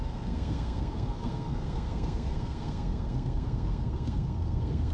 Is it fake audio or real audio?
fake